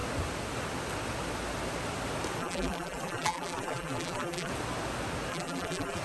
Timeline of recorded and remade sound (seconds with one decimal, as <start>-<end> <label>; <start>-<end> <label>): 0.0-2.4 recorded; 2.4-4.5 remade; 4.5-5.3 recorded; 5.3-6.0 remade